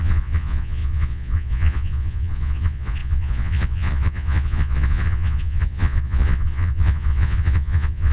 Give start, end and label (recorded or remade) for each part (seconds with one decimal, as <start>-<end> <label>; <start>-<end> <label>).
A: 0.0-8.1 remade